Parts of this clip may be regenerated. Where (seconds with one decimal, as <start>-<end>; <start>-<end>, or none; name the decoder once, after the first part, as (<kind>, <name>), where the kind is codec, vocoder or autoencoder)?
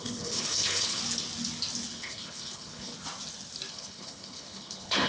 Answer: 0.0-1.0 (codec, HILCodec); 1.9-2.9; 3.7-5.1